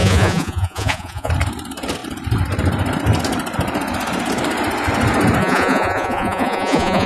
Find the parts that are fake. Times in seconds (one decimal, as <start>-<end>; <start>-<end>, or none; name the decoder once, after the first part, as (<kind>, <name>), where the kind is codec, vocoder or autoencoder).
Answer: 0.0-1.3 (vocoder, Vocos); 5.4-7.1